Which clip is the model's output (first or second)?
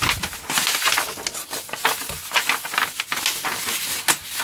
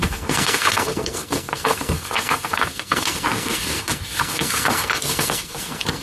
second